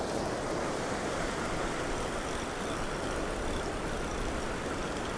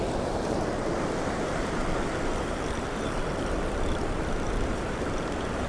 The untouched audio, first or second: first